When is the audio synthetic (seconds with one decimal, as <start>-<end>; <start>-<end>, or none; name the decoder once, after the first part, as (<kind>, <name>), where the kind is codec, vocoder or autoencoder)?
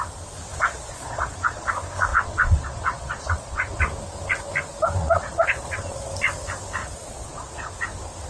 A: 0.5-1.7 (vocoder, Vocos); 2.1-3.8; 5.0-6.1; 6.8-7.7